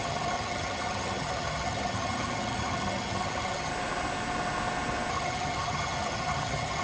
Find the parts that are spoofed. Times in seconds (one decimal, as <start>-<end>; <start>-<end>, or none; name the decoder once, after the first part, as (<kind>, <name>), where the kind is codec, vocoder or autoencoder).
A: 0.0-3.7 (vocoder, HiFi-GAN); 5.1-6.8